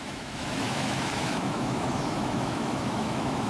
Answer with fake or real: fake